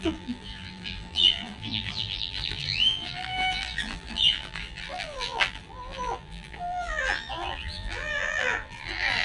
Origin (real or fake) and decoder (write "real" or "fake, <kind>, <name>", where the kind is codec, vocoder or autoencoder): fake, vocoder, BigVGAN v2